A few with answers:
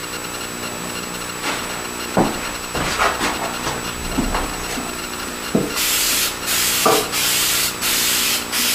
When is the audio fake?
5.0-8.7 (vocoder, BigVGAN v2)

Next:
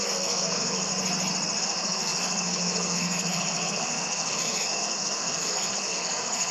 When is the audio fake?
0.0-0.9 (codec, SNAC); 1.6-6.5

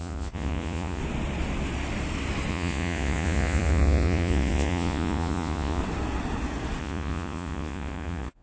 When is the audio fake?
0.0-1.0 (vocoder, Vocos); 2.5-5.8; 6.8-8.4

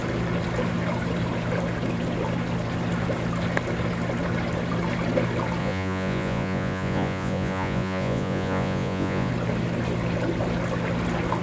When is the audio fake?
5.6-9.3 (vocoder, Vocos)

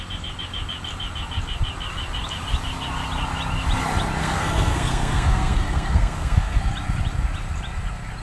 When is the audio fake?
4.2-6.6 (codec, SNAC)